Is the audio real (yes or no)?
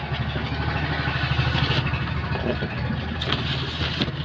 yes